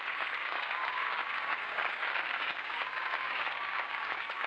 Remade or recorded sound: remade